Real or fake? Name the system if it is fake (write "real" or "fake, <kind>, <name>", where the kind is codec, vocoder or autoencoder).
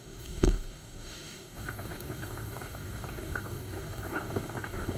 fake, codec, DAC